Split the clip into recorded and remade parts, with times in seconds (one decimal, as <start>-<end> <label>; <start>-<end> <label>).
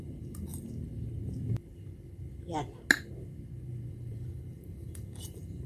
0.0-0.5 remade; 0.5-3.9 recorded; 3.9-5.7 remade